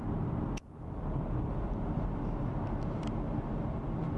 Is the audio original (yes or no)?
yes